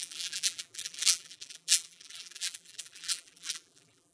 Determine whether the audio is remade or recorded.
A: remade